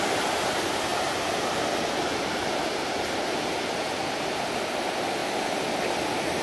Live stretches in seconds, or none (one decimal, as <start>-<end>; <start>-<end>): 0.0-6.4